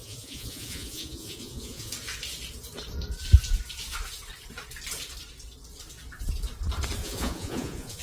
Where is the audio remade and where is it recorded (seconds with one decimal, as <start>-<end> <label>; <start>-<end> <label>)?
0.0-1.9 remade; 1.9-7.0 recorded; 7.0-8.0 remade